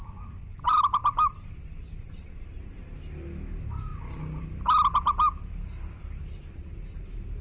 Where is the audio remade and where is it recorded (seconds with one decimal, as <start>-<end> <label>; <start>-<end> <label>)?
0.0-0.5 recorded; 0.5-2.8 remade; 2.8-7.4 recorded